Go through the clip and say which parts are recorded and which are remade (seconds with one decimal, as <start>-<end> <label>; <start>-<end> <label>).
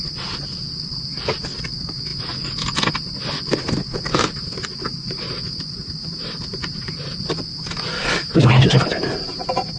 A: 0.0-4.9 recorded; 4.9-7.3 remade; 7.3-8.9 recorded; 8.9-9.8 remade